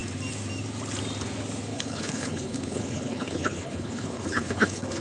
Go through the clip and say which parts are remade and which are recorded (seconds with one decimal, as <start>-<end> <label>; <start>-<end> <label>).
0.0-1.7 recorded; 1.7-5.0 remade